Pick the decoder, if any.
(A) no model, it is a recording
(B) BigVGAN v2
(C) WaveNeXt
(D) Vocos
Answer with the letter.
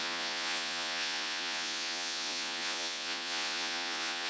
D